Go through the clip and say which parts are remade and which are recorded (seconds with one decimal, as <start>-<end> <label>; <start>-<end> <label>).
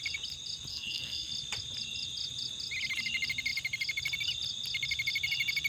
0.0-0.7 recorded; 0.7-1.3 remade; 1.3-5.7 recorded